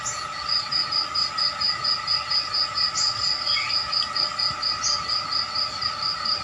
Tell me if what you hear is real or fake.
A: real